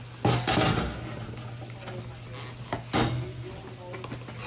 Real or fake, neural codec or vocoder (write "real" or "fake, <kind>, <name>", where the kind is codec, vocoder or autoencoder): real